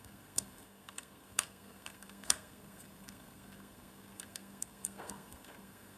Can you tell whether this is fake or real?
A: fake